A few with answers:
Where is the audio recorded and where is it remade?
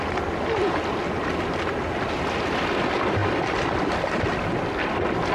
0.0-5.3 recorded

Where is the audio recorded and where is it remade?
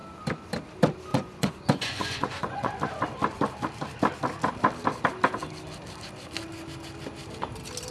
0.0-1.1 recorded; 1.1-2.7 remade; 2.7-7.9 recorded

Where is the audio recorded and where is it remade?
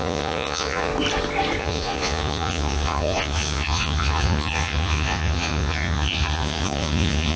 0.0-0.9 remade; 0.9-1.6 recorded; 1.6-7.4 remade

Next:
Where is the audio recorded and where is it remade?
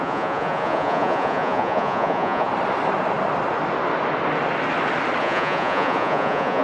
0.0-2.5 remade; 2.5-5.2 recorded; 5.2-6.6 remade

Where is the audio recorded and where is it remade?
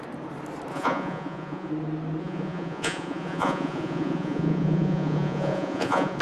0.0-0.7 recorded; 0.7-1.7 remade; 1.7-2.2 recorded; 2.2-6.2 remade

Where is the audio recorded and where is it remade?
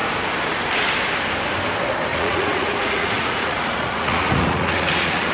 0.0-2.1 recorded; 2.1-5.3 remade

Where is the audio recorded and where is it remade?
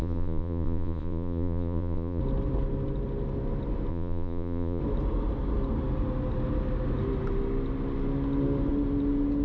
0.0-2.2 remade; 2.2-3.9 recorded; 3.9-4.8 remade; 4.8-9.4 recorded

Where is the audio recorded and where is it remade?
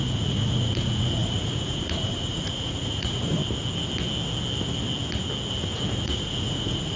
0.0-3.4 remade; 3.4-6.0 recorded; 6.0-7.0 remade